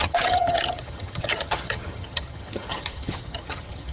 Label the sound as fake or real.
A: fake